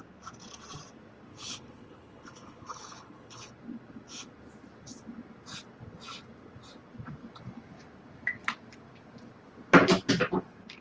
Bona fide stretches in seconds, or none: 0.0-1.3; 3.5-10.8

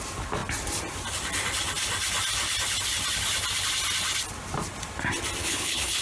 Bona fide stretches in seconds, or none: 0.0-5.4

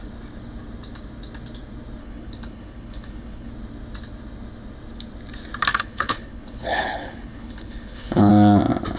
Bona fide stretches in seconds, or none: 0.0-2.0; 3.5-5.7; 8.3-9.0

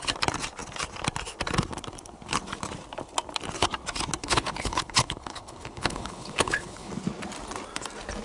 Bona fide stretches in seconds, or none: 0.0-4.2; 6.9-8.2

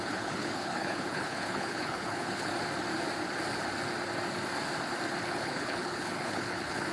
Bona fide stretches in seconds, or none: 2.5-5.2

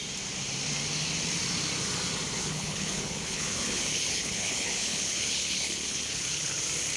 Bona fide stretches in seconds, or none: 0.0-2.4; 6.6-7.0